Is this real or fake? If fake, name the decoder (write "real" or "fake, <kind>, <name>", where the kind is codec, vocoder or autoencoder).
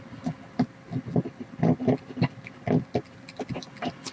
real